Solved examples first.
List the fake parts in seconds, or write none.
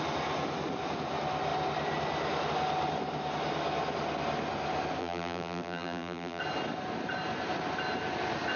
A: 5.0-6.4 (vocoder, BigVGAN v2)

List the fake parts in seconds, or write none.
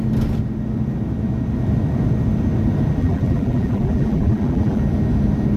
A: 3.0-4.8 (vocoder, BigVGAN v2)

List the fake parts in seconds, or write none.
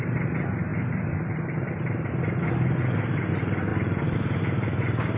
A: 3.7-4.4 (vocoder, BigVGAN v2)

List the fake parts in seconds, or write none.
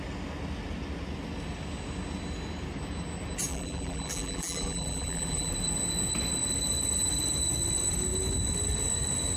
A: 3.5-5.5 (vocoder, BigVGAN v2)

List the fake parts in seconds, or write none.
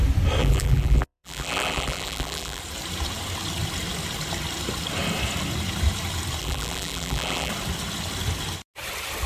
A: 0.4-2.6 (vocoder, BigVGAN v2); 6.4-7.5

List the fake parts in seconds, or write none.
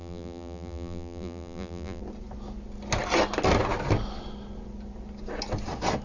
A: 0.0-2.0 (vocoder, BigVGAN v2)